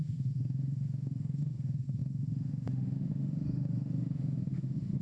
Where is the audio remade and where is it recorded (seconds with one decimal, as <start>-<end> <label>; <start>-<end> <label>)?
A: 0.0-5.0 remade